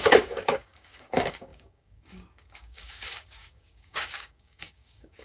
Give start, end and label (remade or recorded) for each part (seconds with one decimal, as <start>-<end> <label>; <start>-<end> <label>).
0.0-5.2 remade